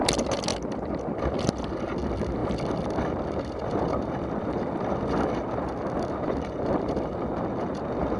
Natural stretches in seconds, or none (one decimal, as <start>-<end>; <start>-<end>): 0.0-2.4; 7.2-8.2

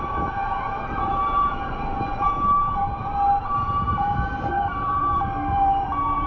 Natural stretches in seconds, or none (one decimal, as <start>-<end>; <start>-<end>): 2.8-3.4